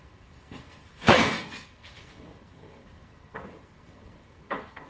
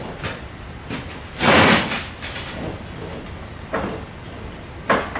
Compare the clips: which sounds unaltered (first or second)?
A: second